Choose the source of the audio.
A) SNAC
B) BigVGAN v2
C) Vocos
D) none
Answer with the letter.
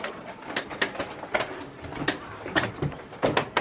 D